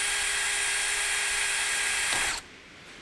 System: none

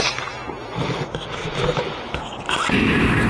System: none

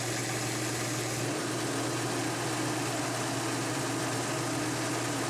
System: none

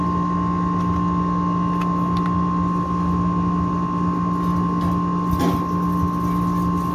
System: none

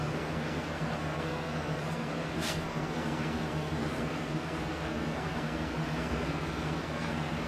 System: codec, SNAC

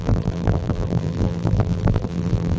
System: vocoder, BigVGAN v2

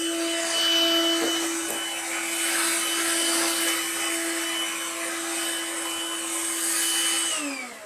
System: none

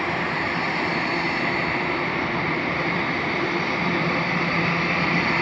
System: vocoder, BigVGAN v2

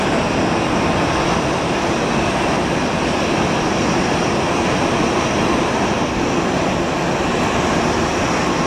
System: none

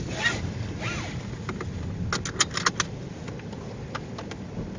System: none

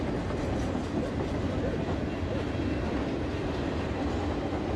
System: none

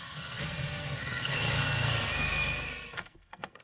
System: codec, SNAC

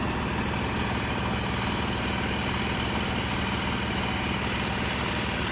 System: none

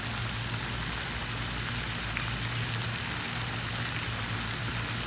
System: none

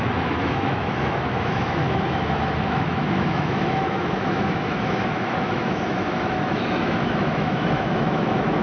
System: autoencoder, DAC-VAE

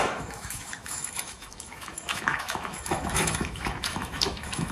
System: autoencoder, DAC-VAE